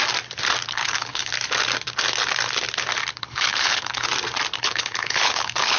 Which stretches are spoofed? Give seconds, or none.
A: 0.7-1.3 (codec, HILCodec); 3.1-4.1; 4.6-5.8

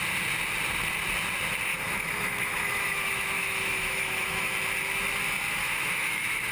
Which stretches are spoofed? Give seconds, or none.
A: 1.7-4.5 (autoencoder, DAC-VAE); 5.6-6.5

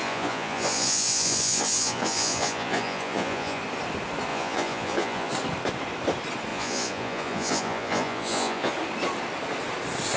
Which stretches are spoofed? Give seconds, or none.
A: 0.0-3.6 (vocoder, Vocos); 4.3-5.3; 6.5-8.7

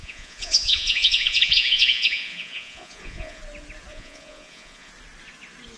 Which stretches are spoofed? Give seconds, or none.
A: 0.0-3.4 (vocoder, Vocos); 3.9-4.9

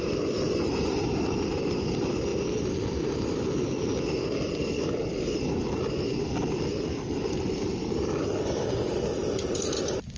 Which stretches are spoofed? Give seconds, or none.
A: none

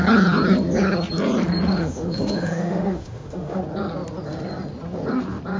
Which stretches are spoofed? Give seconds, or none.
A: 1.7-3.6 (autoencoder, DAC-VAE)

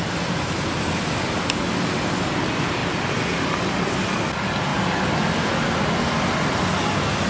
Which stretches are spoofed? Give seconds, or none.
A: 2.8-3.6 (vocoder, BigVGAN v2); 4.7-6.7

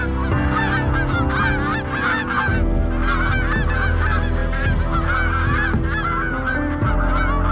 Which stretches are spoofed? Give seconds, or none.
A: none